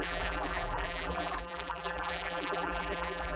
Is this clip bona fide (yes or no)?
no